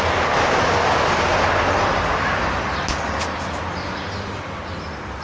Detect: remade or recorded recorded